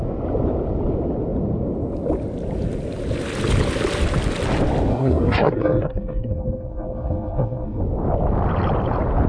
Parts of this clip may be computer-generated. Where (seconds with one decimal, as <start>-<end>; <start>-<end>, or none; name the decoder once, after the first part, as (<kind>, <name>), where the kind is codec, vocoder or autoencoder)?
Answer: 4.9-7.8 (codec, SNAC)